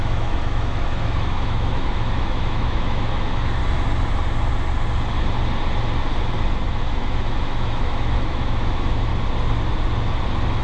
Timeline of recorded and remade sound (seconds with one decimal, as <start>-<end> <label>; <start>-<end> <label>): 0.0-3.6 remade; 3.6-6.7 recorded; 6.7-9.1 remade; 9.1-10.6 recorded